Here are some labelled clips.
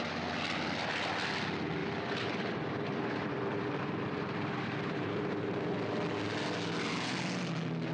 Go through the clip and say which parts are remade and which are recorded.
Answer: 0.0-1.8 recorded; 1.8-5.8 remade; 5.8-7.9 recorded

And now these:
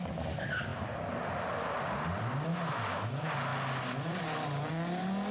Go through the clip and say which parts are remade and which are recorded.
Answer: 0.0-5.3 recorded